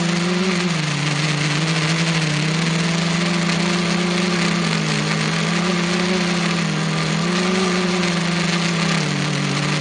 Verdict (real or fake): real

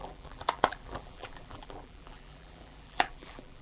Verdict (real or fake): fake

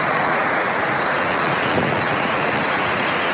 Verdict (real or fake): fake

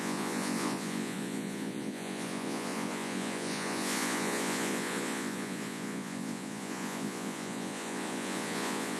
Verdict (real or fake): fake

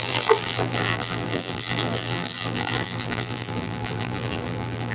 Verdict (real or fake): fake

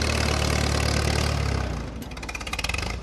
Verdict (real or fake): real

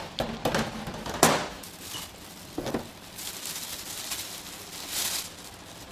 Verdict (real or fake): real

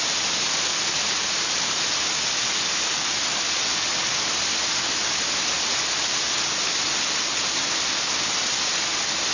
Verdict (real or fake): real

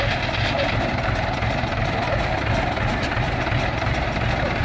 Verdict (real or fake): real